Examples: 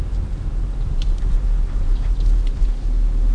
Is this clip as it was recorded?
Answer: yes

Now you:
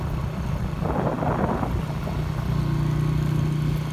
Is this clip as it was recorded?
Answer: yes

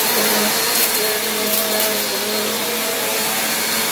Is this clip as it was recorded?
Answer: no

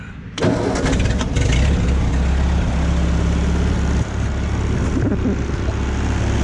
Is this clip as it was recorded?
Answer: yes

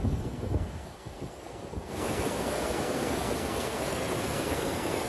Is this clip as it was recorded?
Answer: no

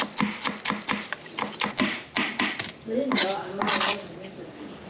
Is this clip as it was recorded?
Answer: yes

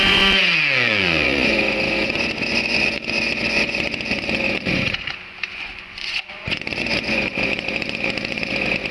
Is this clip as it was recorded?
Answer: no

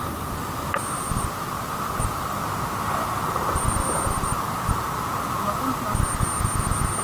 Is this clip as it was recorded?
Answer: yes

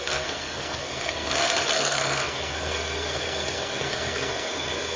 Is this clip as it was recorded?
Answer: no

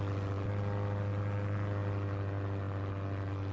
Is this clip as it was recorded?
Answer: yes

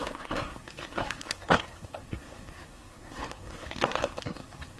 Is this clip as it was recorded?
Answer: no